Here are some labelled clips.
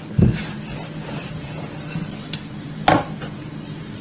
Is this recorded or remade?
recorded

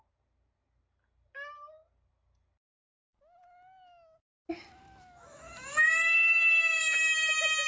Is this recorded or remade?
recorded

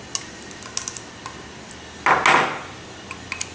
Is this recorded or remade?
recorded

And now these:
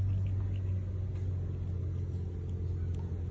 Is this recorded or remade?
recorded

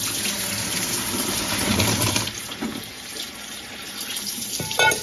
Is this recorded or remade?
remade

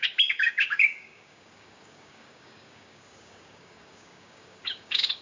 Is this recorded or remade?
remade